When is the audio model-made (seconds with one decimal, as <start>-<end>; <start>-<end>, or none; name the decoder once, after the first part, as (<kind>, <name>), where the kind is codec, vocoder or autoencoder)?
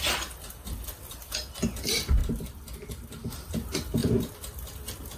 0.0-2.2 (vocoder, BigVGAN v2); 3.3-5.2